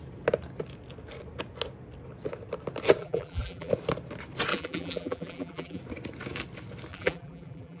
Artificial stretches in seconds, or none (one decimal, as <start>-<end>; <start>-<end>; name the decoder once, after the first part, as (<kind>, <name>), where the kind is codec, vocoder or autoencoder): 3.0-3.7 (vocoder, BigVGAN v2); 4.5-5.8; 6.9-7.8